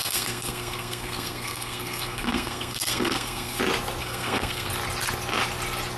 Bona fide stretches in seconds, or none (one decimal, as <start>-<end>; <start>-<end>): 3.6-4.0; 4.7-6.0